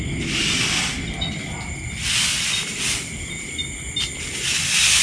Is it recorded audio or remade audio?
recorded